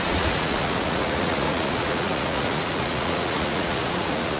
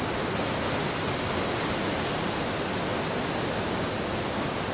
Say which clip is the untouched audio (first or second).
second